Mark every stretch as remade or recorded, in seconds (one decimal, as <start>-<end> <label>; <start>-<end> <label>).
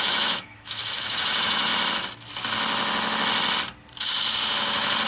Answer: 0.0-1.7 remade; 1.7-5.1 recorded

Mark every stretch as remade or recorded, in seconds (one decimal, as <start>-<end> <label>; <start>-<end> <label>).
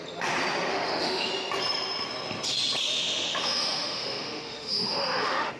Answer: 0.0-0.7 recorded; 0.7-1.3 remade; 1.3-2.9 recorded; 2.9-5.6 remade